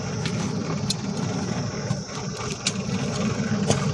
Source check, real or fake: real